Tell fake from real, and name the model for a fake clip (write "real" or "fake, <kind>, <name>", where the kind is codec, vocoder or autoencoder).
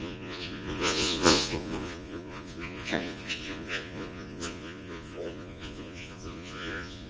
fake, vocoder, Vocos